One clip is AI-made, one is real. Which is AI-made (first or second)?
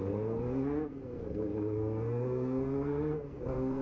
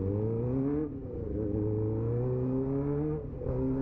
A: first